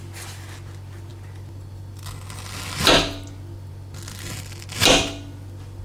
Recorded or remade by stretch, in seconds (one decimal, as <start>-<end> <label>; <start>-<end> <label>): 0.0-5.8 recorded